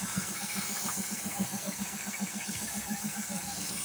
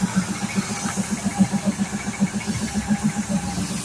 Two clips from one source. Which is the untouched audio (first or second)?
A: second